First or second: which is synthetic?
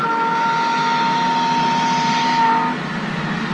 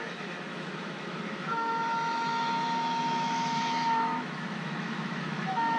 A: second